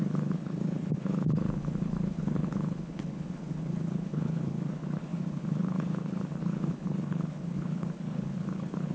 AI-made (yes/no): yes